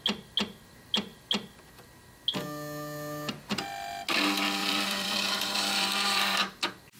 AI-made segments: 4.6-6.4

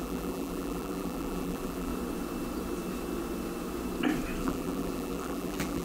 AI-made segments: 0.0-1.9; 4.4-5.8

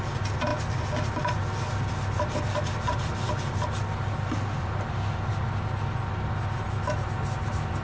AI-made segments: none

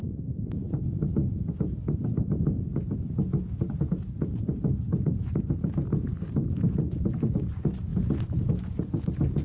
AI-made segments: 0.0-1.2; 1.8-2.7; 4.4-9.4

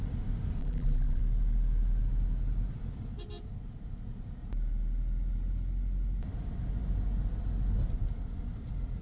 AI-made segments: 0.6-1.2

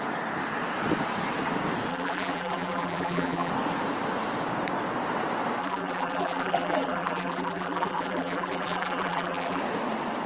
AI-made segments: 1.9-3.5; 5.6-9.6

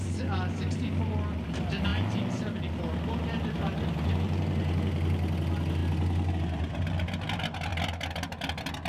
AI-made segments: none

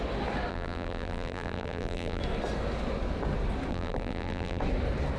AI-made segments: 0.5-2.2; 3.7-4.6